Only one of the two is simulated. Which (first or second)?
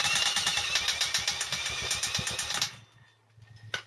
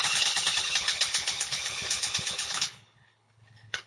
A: second